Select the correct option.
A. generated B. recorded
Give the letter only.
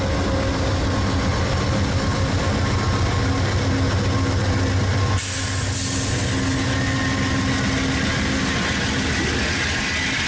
B